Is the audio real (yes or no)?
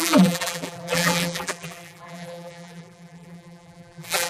no